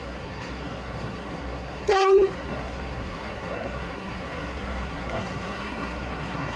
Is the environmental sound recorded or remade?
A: remade